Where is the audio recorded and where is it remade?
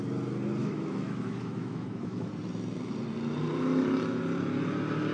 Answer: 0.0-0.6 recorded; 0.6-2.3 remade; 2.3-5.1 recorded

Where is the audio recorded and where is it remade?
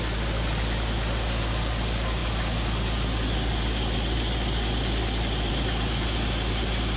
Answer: 0.0-7.0 recorded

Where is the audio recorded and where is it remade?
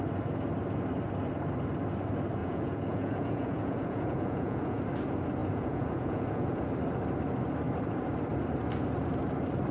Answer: 0.0-2.4 recorded; 2.4-4.8 remade; 4.8-5.4 recorded; 5.4-6.7 remade; 6.7-9.7 recorded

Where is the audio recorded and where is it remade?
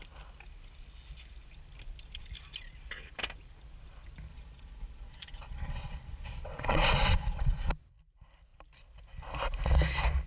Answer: 0.0-4.3 recorded; 4.3-7.7 remade; 7.7-10.3 recorded